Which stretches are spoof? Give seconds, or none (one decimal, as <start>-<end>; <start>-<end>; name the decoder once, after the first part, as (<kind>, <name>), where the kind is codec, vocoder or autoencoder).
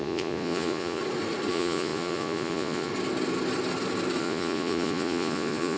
0.0-1.0 (vocoder, Vocos); 1.5-2.9; 4.2-5.8